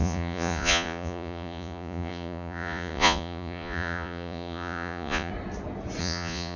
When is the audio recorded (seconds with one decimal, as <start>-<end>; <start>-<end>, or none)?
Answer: 5.3-6.0